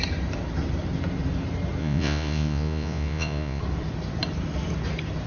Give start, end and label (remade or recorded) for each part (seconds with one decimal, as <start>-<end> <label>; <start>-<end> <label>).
0.0-1.8 recorded; 1.8-3.6 remade; 3.6-5.3 recorded